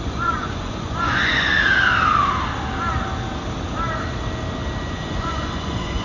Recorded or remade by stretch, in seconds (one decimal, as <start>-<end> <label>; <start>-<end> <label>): 0.0-1.5 remade; 1.5-4.9 recorded; 4.9-6.0 remade